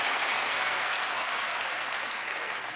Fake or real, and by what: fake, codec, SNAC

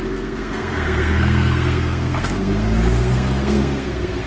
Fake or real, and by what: fake, codec, SNAC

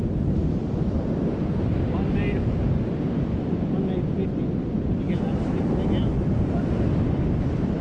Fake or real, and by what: real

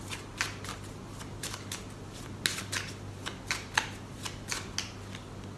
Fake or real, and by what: real